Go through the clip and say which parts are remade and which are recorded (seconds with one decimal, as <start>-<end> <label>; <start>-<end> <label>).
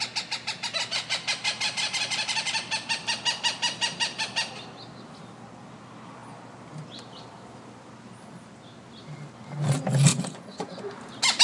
0.0-10.1 recorded; 10.1-10.9 remade; 10.9-11.4 recorded